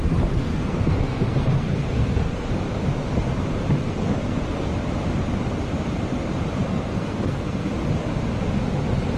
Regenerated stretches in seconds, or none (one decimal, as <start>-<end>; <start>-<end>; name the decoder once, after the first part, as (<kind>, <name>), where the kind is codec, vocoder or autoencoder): 0.5-2.5 (codec, SNAC); 3.8-4.7; 6.6-7.7